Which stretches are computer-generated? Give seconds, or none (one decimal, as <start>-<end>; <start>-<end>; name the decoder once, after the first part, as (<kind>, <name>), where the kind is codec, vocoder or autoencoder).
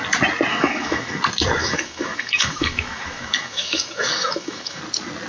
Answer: 0.5-1.2 (autoencoder, DAC-VAE); 1.6-4.8